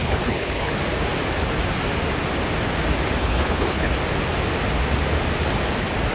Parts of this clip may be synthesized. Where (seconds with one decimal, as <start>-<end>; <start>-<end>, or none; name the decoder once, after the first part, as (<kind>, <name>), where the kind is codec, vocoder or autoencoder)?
0.0-0.7 (codec, HILCodec); 3.2-3.9